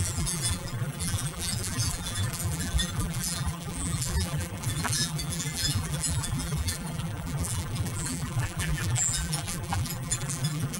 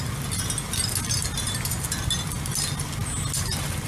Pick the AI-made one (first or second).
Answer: first